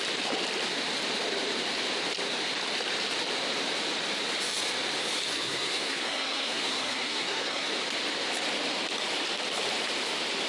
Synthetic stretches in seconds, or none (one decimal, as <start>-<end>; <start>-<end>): 5.3-7.7